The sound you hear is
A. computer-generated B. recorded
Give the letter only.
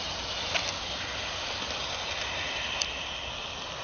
B